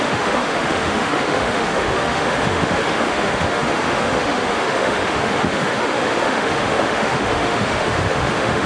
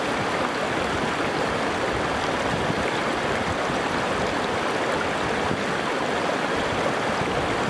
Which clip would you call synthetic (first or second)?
first